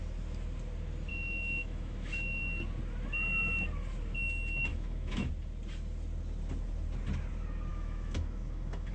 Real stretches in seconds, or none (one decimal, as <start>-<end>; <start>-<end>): 0.0-1.1; 2.4-4.7; 5.3-7.7